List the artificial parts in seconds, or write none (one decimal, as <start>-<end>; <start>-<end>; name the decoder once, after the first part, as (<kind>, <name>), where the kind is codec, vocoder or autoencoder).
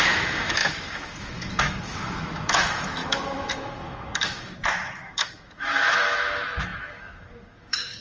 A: 0.0-8.0 (autoencoder, DAC-VAE)